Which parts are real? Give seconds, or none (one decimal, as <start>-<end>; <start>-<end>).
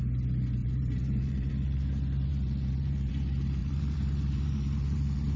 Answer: 0.0-0.6; 1.5-2.3; 3.1-3.6